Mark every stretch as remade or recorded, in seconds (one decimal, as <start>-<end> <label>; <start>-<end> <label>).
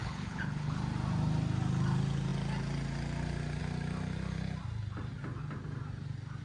0.0-0.8 remade; 0.8-6.4 recorded